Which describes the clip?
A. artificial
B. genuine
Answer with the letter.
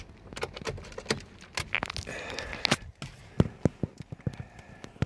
B